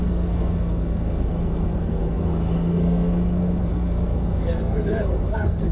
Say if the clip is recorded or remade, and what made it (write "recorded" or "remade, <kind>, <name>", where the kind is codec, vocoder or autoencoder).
remade, codec, SNAC